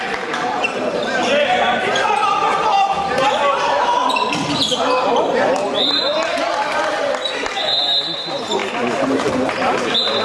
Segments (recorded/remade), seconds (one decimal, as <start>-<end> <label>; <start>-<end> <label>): 0.0-8.6 remade; 8.6-10.2 recorded